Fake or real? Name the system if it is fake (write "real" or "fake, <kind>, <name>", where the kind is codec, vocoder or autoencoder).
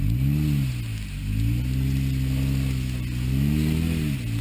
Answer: real